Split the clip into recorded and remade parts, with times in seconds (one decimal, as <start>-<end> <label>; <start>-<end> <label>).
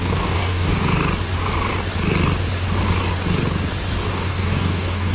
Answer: 0.0-1.0 remade; 1.0-4.1 recorded; 4.1-5.1 remade